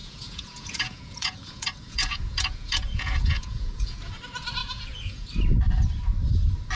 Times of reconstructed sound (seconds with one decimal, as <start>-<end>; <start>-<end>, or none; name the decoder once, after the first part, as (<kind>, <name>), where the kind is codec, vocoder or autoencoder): 0.0-4.1 (vocoder, Vocos); 4.6-5.3